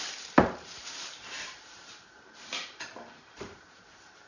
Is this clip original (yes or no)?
no